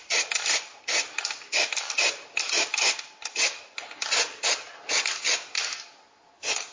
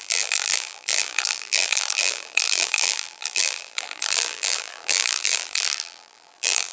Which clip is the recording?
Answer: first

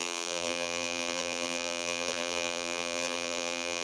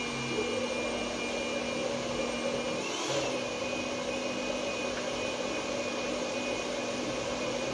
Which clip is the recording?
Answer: second